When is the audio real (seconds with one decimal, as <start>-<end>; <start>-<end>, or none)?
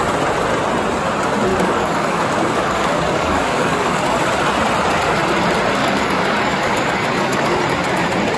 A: 0.0-1.5; 4.2-5.8; 7.6-8.4